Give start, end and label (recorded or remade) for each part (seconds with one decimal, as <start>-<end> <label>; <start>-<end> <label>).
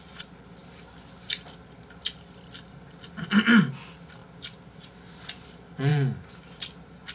0.0-4.2 recorded; 4.2-4.9 remade; 4.9-5.9 recorded; 5.9-6.6 remade; 6.6-7.1 recorded